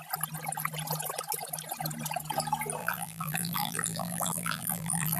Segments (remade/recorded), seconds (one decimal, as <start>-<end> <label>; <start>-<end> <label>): 0.0-2.8 recorded; 2.8-5.2 remade